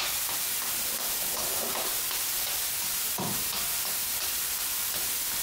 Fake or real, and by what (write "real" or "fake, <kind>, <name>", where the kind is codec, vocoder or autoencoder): real